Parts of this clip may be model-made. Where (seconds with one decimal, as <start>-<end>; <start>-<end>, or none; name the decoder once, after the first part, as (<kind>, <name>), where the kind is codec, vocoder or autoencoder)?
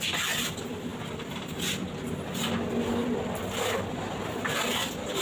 0.0-5.2 (vocoder, BigVGAN v2)